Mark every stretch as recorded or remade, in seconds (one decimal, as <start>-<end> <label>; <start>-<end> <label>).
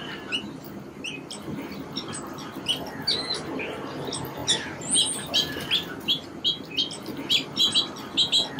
0.0-8.6 recorded